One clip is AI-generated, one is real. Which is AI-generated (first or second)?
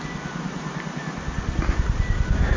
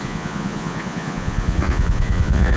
second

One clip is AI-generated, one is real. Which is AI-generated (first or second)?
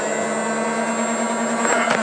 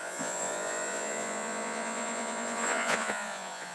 second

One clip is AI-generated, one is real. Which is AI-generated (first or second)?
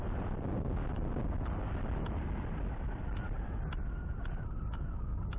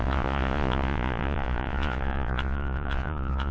second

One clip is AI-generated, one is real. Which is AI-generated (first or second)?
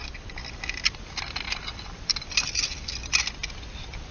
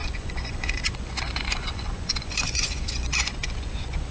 second